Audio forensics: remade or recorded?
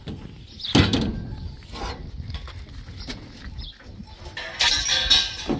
recorded